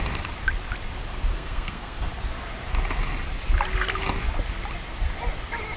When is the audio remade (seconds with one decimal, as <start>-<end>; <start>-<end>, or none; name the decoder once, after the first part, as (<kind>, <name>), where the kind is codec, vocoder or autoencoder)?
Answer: 1.3-2.1 (codec, SNAC)